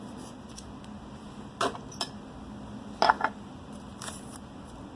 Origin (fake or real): real